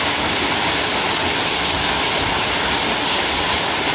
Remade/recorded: recorded